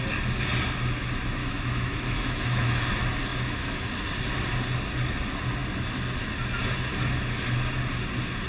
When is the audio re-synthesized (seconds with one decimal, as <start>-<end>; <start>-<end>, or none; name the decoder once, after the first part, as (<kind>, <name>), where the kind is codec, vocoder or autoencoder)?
1.4-2.9 (autoencoder, DAC-VAE); 3.3-3.9